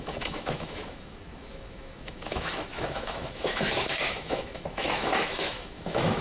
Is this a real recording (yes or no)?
no